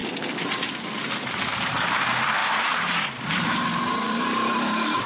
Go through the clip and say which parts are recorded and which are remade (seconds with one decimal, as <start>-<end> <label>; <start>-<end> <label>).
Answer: 0.0-1.0 recorded; 1.0-5.1 remade